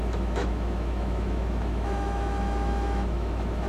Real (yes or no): no